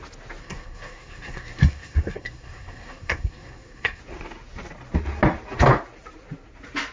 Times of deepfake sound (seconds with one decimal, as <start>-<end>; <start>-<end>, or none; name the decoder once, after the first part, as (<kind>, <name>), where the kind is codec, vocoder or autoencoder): 0.4-4.0 (codec, SNAC)